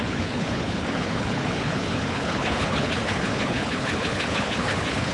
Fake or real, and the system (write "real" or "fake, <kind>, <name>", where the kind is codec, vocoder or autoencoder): fake, codec, HILCodec